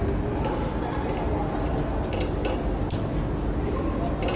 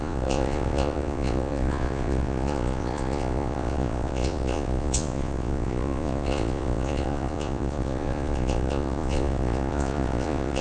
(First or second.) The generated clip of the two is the second